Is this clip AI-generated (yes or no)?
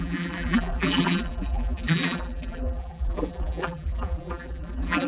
yes